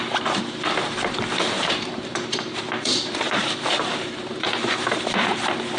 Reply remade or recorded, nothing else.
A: remade